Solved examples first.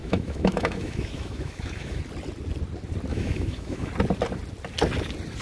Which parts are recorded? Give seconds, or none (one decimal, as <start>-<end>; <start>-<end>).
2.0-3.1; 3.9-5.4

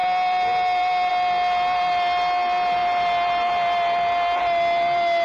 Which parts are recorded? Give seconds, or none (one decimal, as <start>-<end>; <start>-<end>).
0.0-5.2

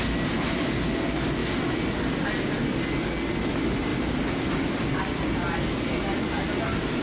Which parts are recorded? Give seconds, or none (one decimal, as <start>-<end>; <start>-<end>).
0.0-7.0

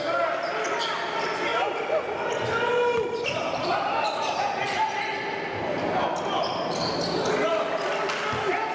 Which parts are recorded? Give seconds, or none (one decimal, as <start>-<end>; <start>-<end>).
0.0-8.7

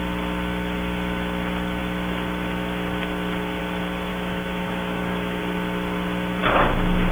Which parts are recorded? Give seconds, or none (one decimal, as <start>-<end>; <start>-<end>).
0.0-4.1; 5.4-7.1

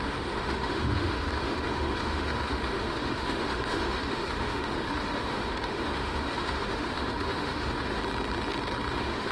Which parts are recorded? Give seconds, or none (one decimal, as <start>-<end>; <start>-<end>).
8.0-8.9

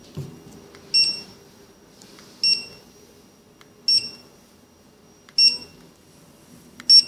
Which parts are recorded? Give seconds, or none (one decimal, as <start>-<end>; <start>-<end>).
0.0-7.1